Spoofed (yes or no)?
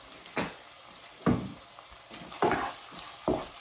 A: no